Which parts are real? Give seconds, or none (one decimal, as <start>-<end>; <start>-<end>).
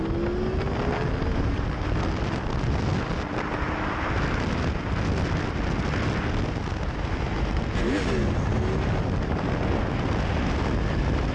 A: 0.0-1.3; 1.9-11.3